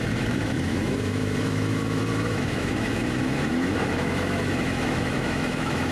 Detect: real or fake fake